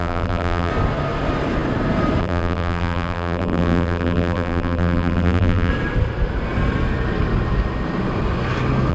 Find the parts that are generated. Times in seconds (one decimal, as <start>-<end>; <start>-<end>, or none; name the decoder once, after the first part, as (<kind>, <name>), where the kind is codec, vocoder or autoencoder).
0.0-0.7 (vocoder, BigVGAN v2); 2.2-5.7